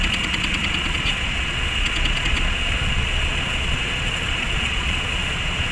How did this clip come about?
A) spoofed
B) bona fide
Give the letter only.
A